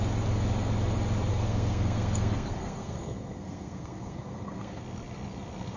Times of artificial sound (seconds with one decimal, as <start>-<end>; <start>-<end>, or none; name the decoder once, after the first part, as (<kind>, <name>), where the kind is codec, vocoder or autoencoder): 1.3-4.8 (codec, SNAC)